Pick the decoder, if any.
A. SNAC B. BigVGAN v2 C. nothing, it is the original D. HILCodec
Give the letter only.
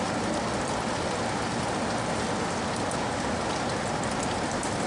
C